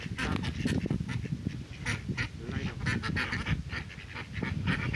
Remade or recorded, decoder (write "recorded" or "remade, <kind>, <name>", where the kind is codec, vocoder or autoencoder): recorded